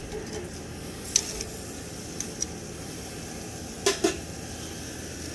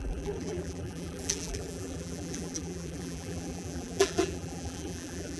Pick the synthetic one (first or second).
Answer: second